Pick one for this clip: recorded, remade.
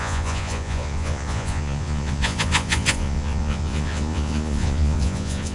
remade